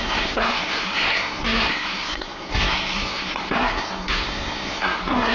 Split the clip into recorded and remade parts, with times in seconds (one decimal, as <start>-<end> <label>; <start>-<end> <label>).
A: 0.0-5.3 remade